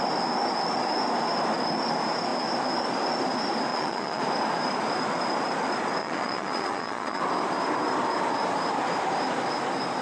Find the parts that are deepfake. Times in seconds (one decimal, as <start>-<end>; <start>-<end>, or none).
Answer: 3.7-4.2; 6.0-7.2

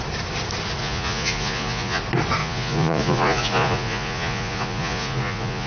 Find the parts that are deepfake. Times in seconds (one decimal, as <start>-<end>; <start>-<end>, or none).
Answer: 0.8-2.0; 2.4-5.7